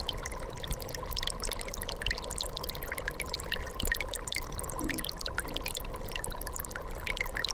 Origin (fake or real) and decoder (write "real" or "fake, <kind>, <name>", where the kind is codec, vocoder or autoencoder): fake, vocoder, BigVGAN v2